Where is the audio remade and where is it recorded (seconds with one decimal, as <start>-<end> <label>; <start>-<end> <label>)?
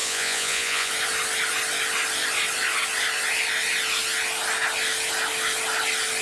0.0-0.9 remade; 0.9-6.2 recorded